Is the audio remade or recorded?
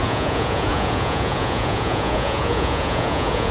remade